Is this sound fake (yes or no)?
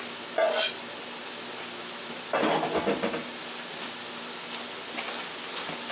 no